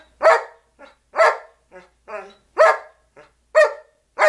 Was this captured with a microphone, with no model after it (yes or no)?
yes